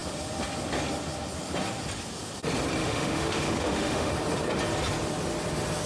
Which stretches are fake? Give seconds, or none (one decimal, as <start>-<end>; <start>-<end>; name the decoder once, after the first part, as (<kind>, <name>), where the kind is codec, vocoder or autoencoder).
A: 2.8-4.1 (autoencoder, DAC-VAE)